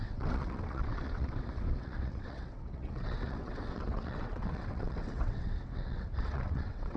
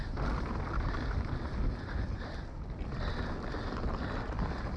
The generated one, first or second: first